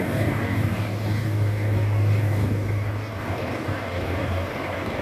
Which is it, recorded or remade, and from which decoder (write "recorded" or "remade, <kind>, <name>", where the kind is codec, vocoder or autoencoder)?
remade, codec, DAC